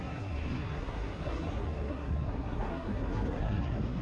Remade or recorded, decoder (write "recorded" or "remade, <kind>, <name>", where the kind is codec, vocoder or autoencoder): remade, codec, SNAC